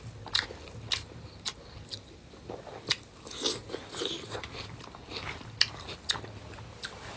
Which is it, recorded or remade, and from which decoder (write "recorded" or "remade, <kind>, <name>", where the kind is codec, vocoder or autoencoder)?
recorded